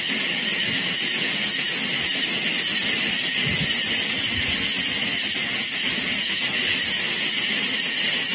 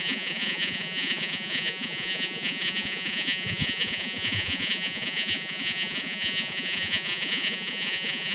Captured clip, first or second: first